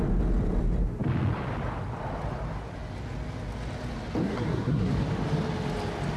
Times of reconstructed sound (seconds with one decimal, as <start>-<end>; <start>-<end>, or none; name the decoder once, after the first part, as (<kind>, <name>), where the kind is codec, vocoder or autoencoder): 4.2-4.9 (codec, SNAC)